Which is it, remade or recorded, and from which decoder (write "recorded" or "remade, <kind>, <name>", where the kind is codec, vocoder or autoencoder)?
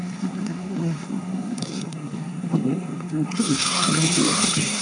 remade, codec, SNAC